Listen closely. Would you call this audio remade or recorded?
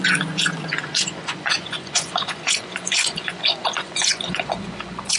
remade